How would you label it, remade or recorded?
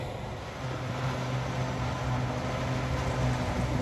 recorded